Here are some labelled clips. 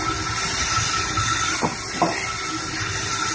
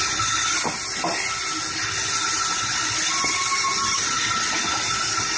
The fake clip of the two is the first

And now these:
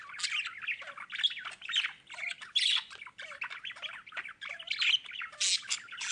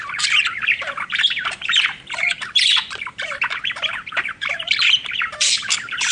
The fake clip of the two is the second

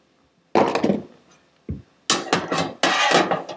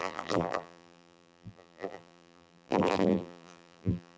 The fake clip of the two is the second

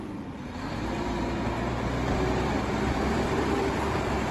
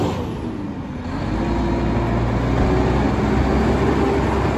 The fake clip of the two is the first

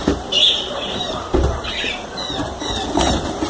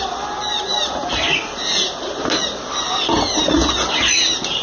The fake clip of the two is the first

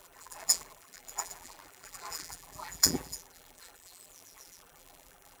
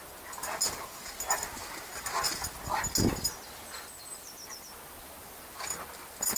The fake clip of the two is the first